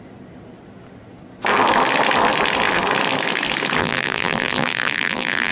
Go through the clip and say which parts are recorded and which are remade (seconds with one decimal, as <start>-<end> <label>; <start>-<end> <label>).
0.0-3.8 recorded; 3.8-5.5 remade